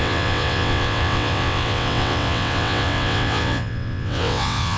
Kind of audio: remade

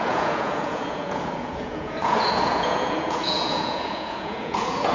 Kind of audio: remade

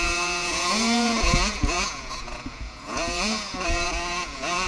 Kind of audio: remade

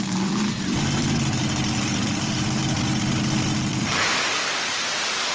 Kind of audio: remade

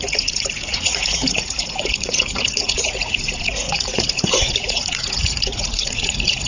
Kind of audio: remade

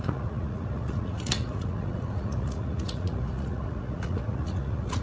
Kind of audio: remade